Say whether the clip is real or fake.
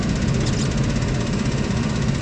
real